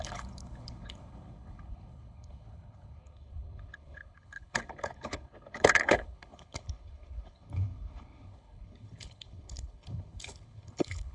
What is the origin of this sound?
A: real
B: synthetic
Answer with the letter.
B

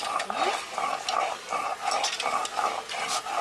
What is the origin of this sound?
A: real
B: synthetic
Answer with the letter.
A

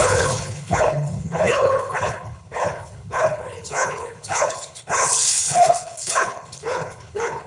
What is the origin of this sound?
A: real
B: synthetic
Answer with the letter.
B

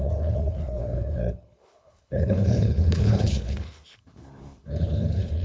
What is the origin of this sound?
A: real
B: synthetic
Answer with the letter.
B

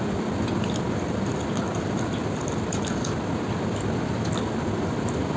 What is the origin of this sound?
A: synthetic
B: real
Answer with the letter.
B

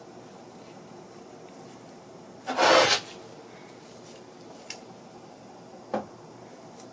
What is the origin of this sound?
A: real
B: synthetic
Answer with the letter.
A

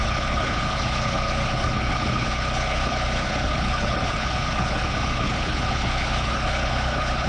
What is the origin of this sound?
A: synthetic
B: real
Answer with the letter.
A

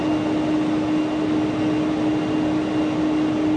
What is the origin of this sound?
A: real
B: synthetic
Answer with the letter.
A